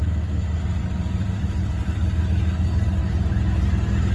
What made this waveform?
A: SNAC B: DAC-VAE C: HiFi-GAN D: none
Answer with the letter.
D